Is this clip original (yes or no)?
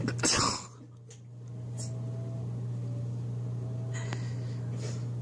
yes